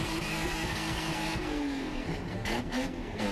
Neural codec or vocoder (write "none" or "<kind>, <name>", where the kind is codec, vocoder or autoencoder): codec, SNAC